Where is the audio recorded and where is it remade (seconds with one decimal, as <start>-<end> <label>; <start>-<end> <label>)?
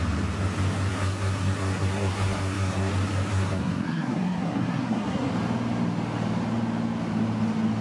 0.0-0.9 recorded; 0.9-2.9 remade; 2.9-3.3 recorded; 3.3-5.3 remade; 5.3-7.8 recorded